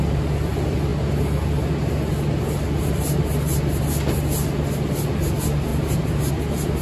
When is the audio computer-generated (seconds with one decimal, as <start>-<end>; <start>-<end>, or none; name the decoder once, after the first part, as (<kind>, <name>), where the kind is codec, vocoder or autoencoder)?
5.7-6.3 (vocoder, BigVGAN v2)